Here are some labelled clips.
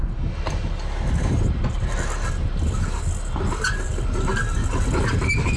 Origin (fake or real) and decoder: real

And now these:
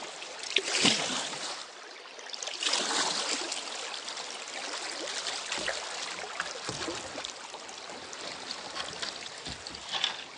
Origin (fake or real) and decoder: real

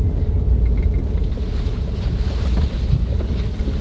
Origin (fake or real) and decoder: real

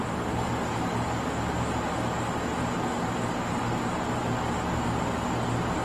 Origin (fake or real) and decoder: real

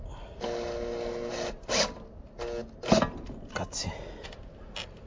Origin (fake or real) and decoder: real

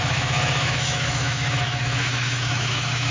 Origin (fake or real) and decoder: fake, autoencoder, DAC-VAE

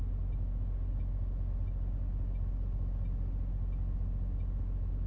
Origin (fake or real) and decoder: real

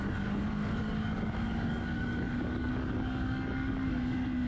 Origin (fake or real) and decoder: fake, codec, DAC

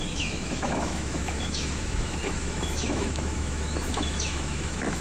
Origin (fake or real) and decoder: fake, autoencoder, DAC-VAE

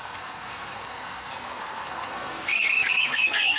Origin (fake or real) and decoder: fake, codec, SNAC